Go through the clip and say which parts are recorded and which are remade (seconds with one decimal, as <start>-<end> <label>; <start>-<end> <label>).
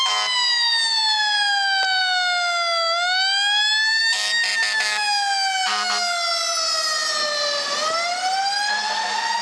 0.0-9.4 recorded